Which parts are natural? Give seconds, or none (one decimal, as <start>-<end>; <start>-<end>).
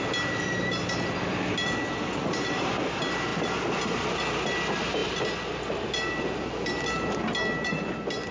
0.0-3.3; 4.1-8.3